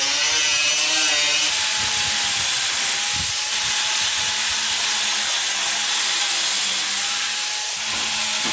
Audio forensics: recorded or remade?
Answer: recorded